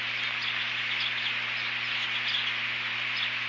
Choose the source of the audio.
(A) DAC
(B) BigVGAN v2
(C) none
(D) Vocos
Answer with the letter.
C